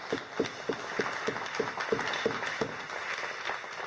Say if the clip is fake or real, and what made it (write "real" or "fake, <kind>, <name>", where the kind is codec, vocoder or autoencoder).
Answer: real